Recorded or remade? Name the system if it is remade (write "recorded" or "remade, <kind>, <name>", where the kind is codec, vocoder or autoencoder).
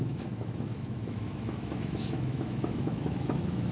remade, autoencoder, DAC-VAE